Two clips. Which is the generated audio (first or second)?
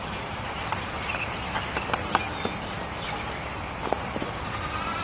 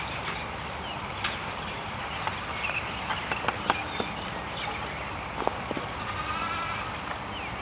first